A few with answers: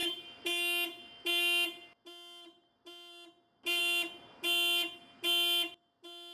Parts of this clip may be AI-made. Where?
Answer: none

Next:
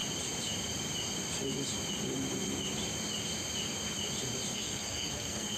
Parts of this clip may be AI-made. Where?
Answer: 4.5-5.6 (codec, SNAC)

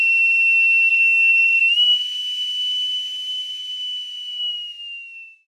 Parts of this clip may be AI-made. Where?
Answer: 0.9-1.6 (codec, SNAC)

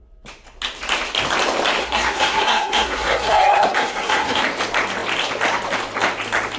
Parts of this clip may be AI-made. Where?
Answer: 1.8-4.4 (codec, SNAC)

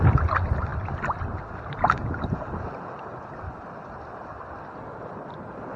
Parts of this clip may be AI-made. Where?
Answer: none